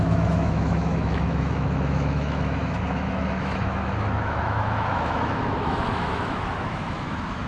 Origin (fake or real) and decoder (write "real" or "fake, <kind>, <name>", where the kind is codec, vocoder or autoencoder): fake, autoencoder, DAC-VAE